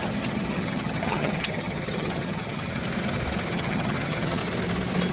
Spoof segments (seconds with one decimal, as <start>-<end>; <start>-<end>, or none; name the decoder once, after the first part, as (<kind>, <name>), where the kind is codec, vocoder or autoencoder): 0.0-2.8 (vocoder, HiFi-GAN); 3.5-4.4